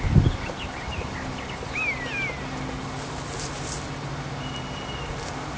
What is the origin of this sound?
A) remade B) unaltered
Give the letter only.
B